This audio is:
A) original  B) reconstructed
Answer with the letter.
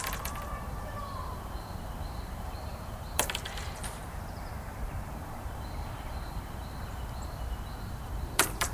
B